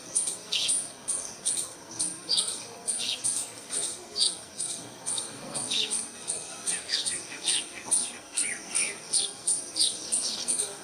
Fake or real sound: fake